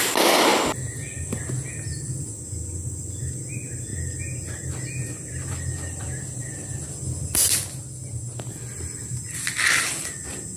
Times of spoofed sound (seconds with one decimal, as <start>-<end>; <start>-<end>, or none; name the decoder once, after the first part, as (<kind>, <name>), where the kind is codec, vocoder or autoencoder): none